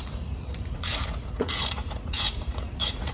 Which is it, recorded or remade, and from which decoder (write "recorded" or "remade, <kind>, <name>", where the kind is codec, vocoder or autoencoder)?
remade, vocoder, Vocos